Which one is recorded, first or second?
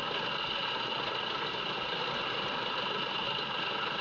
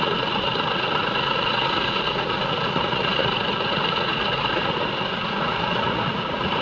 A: first